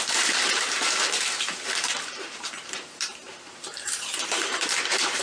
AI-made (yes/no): yes